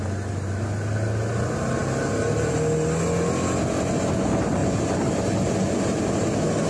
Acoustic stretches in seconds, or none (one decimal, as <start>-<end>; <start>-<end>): 0.0-6.7